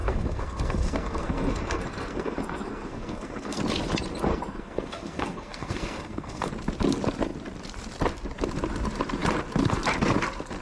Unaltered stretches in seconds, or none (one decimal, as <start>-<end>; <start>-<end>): 3.6-4.3; 6.5-10.6